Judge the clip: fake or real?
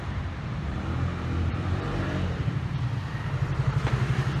fake